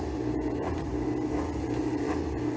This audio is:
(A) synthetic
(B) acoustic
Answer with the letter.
B